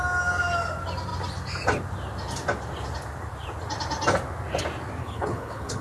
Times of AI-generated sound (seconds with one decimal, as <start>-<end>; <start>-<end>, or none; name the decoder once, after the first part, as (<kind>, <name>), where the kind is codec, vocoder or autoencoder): 5.0-5.8 (codec, HILCodec)